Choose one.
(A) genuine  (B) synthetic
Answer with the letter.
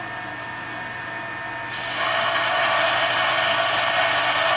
A